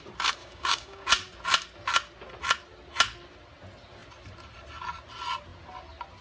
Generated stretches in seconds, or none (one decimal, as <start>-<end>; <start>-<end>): 0.4-1.1

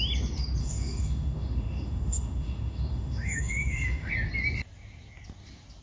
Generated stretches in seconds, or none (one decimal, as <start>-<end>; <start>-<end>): 0.6-4.1

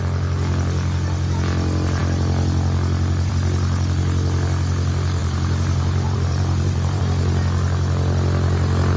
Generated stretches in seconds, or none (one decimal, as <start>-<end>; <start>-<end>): 5.2-7.0